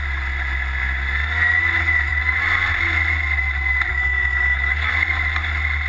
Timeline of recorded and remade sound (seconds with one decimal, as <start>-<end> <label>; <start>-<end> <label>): 0.0-3.9 recorded; 3.9-4.9 remade; 4.9-5.9 recorded